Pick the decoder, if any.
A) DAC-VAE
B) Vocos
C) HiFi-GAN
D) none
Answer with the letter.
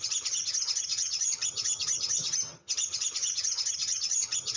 C